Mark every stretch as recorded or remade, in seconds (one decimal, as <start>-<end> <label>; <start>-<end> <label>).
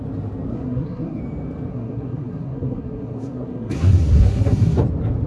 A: 0.0-0.5 recorded; 0.5-1.2 remade; 1.2-1.7 recorded; 1.7-4.8 remade; 4.8-5.3 recorded